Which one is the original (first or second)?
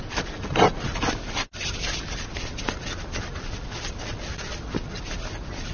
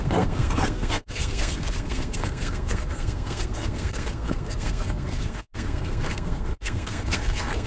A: first